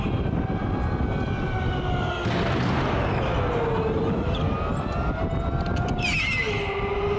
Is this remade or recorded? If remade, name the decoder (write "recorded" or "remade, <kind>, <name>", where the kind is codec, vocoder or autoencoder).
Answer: recorded